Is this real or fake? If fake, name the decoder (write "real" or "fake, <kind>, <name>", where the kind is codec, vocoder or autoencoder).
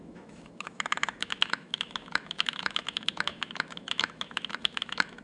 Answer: fake, autoencoder, DAC-VAE